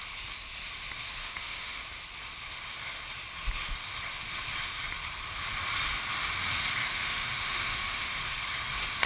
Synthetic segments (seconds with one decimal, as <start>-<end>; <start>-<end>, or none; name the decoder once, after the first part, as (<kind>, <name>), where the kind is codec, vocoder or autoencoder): 1.2-1.8 (autoencoder, DAC-VAE); 6.8-8.2

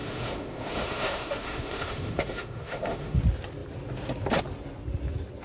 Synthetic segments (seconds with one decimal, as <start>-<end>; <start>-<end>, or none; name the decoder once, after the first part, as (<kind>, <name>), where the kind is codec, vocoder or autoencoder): 0.0-3.2 (autoencoder, DAC-VAE)

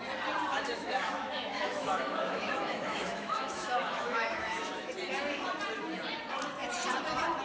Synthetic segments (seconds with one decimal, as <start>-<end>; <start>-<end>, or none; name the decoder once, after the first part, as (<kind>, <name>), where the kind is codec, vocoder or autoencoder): 0.5-4.9 (autoencoder, DAC-VAE)

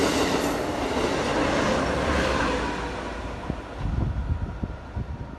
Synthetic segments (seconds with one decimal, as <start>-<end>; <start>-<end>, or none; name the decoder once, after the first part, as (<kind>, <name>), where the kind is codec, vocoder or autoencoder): none

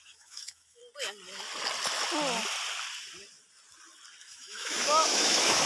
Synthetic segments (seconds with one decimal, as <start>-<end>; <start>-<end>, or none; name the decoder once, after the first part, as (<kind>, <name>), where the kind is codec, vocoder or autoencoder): 0.0-0.8 (autoencoder, DAC-VAE); 4.2-5.7